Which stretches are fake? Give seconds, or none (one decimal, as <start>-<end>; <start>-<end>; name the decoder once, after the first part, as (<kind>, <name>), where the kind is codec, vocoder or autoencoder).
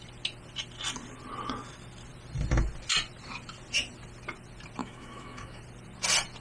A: 4.8-5.6 (autoencoder, DAC-VAE)